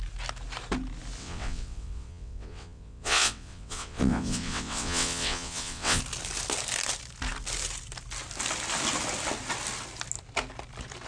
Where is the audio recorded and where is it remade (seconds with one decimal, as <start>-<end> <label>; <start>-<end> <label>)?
0.0-1.2 recorded; 1.2-6.0 remade; 6.0-11.1 recorded

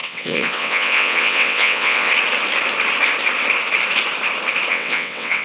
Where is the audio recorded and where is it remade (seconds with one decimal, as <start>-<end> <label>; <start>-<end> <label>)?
0.0-2.1 remade; 2.1-4.7 recorded; 4.7-5.4 remade

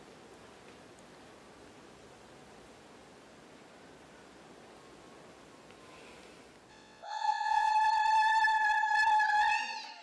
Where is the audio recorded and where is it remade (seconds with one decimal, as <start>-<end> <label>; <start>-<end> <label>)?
0.0-6.7 recorded; 6.7-7.7 remade; 7.7-10.0 recorded

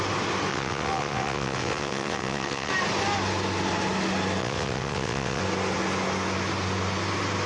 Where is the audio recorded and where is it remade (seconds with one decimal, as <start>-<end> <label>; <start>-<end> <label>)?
0.0-0.5 recorded; 0.5-2.7 remade; 2.7-4.4 recorded; 4.4-5.4 remade; 5.4-7.5 recorded

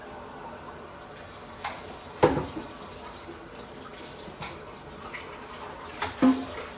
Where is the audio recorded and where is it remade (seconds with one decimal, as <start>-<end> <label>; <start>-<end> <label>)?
0.0-6.8 recorded

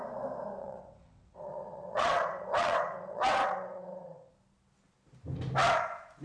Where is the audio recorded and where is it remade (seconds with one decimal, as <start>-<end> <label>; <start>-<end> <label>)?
0.0-0.6 recorded; 0.6-4.3 remade; 4.3-6.2 recorded